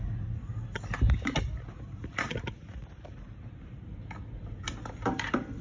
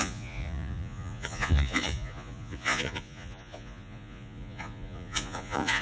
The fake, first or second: second